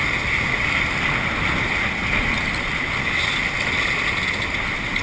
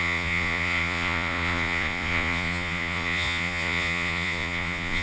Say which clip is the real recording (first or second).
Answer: first